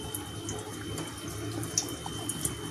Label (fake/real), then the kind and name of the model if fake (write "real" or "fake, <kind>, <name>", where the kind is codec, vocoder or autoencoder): real